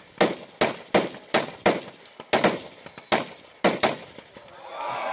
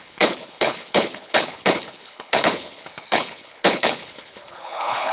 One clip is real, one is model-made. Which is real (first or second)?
first